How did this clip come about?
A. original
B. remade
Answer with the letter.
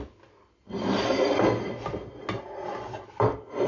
A